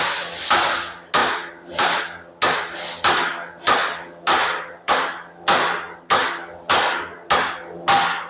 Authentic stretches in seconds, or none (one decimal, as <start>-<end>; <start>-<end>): 0.0-1.2; 2.0-3.8; 4.9-8.3